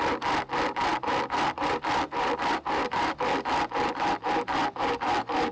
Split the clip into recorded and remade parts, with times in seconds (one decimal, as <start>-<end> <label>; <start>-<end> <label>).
0.0-5.5 recorded